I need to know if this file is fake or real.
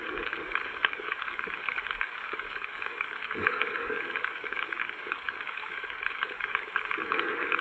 fake